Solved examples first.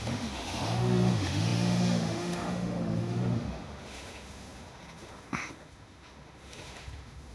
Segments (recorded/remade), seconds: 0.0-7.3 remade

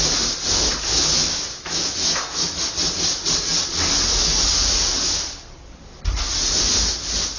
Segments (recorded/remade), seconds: 0.0-0.9 recorded; 0.9-2.7 remade; 2.7-7.4 recorded

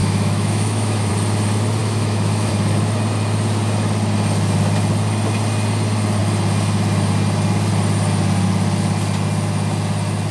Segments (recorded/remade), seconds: 0.0-1.1 remade; 1.1-1.8 recorded; 1.8-2.5 remade; 2.5-10.3 recorded